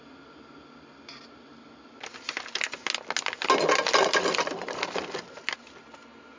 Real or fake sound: real